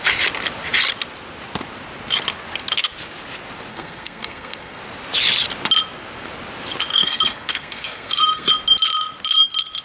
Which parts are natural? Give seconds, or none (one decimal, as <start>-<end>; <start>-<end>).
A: 0.0-3.7; 4.8-6.9; 8.5-9.8